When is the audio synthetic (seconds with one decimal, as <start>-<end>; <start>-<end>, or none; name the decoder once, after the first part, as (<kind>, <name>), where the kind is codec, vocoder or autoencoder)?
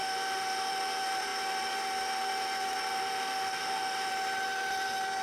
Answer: 0.0-0.7 (autoencoder, DAC-VAE); 2.9-4.1